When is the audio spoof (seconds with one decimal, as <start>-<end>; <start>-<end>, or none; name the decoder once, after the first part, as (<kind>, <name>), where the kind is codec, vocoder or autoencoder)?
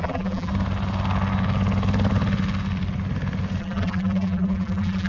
0.0-0.5 (vocoder, BigVGAN v2); 3.6-5.1